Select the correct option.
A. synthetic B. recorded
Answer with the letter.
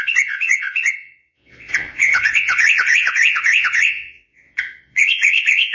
A